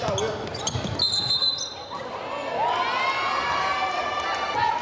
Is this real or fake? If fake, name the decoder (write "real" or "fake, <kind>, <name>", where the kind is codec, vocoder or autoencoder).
real